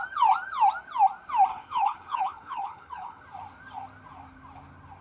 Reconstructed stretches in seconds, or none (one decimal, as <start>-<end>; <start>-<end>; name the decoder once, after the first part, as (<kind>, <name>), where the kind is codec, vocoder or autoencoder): 1.5-3.2 (codec, HILCodec)